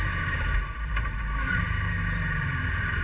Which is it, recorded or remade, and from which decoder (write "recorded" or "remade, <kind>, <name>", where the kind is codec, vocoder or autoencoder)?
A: remade, vocoder, BigVGAN v2